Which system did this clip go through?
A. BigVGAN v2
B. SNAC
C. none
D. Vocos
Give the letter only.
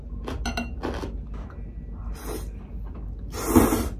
C